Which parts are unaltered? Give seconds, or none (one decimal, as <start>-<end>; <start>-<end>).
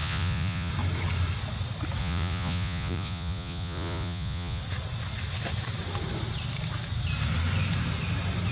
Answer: 0.7-2.0; 4.6-8.5